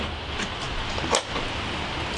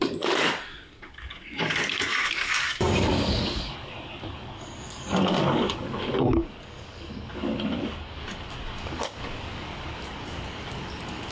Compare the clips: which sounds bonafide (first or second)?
first